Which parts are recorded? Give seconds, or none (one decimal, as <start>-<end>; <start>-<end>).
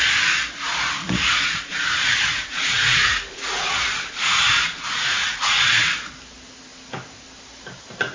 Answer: 0.0-1.2; 5.9-8.1